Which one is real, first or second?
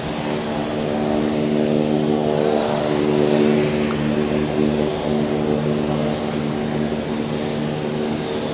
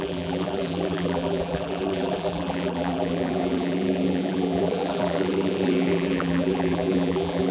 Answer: first